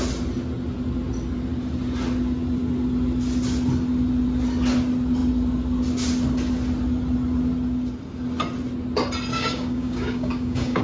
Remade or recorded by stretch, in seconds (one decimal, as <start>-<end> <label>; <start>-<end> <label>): 0.0-9.3 recorded; 9.3-10.8 remade